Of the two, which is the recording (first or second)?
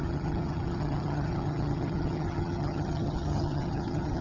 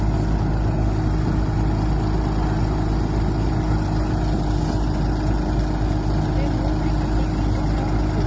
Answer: second